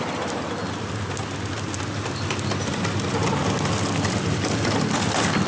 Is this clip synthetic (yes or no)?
no